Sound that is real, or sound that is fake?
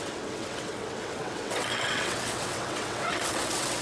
fake